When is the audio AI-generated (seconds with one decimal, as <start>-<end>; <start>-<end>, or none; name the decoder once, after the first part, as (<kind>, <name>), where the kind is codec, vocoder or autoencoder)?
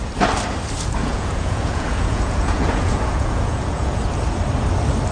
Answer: 1.0-4.1 (vocoder, Vocos)